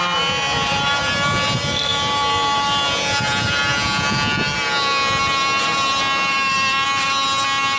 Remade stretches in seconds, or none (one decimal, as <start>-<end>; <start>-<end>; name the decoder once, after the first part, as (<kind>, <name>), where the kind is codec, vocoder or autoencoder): none